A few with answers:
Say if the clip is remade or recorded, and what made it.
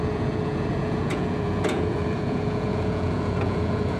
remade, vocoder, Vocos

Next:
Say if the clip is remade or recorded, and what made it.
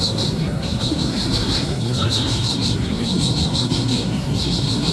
remade, codec, SNAC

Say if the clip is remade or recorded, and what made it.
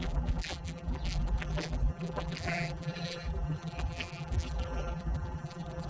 remade, vocoder, BigVGAN v2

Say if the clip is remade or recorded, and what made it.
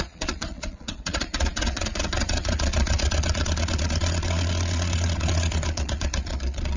remade, vocoder, Vocos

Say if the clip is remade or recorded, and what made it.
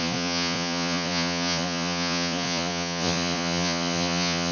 remade, vocoder, Vocos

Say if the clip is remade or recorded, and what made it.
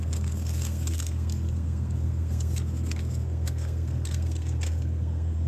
remade, codec, SNAC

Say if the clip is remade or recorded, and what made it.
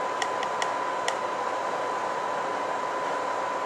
recorded